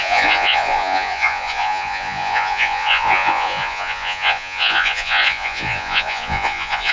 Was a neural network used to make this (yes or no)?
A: yes